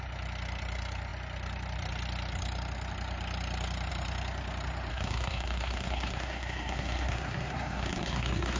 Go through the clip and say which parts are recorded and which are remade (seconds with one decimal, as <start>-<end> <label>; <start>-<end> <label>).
0.0-4.9 recorded; 4.9-8.6 remade